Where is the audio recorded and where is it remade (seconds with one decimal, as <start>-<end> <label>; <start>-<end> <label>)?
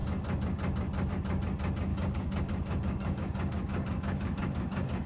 0.0-1.9 recorded; 1.9-5.1 remade